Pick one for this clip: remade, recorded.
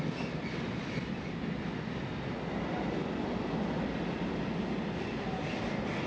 recorded